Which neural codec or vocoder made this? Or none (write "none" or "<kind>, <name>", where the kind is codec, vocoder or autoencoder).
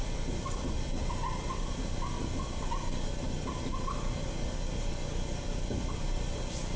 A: none